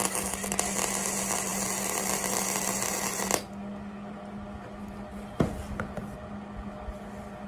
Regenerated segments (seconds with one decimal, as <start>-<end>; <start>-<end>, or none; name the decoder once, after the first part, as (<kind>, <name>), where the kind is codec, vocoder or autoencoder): none